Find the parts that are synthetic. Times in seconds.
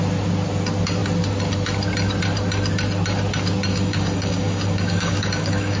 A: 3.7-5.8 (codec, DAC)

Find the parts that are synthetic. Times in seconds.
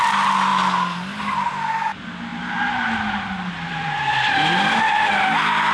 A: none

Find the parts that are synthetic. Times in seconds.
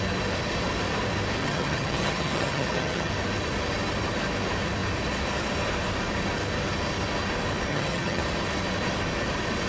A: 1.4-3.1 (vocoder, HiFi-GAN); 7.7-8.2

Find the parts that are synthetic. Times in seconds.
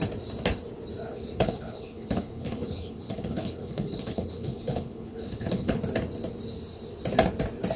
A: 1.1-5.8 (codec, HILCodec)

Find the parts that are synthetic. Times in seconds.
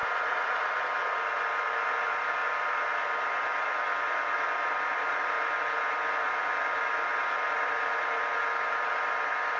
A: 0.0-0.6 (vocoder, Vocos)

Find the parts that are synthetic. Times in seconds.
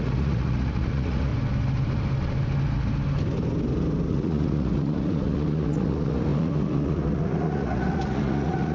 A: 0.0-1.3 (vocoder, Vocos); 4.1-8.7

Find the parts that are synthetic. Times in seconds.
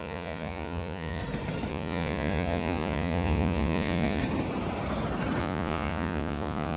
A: 0.0-1.2 (vocoder, Vocos); 1.7-4.2; 5.4-6.8